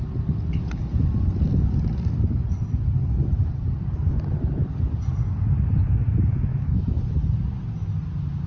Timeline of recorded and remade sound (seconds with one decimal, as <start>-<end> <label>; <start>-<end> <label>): 0.0-6.5 recorded; 6.5-7.0 remade; 7.0-8.5 recorded